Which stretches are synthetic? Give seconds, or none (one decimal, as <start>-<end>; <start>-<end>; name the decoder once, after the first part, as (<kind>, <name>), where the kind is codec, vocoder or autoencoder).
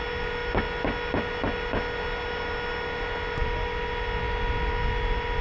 none